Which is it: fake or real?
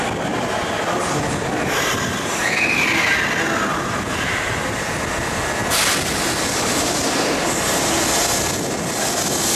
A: real